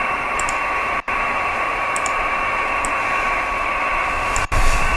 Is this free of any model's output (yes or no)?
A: no